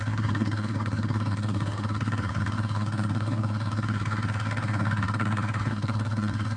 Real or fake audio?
fake